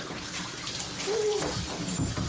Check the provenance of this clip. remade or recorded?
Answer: recorded